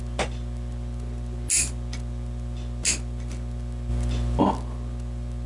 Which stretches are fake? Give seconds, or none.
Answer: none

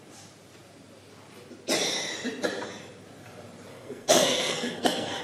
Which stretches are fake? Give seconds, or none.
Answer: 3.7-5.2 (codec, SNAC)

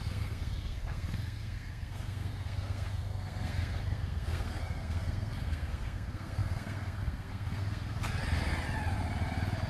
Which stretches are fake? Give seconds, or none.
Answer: 0.0-8.2 (codec, SNAC)